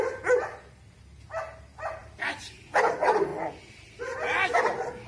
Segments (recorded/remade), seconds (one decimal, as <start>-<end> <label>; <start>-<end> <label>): 0.0-5.1 recorded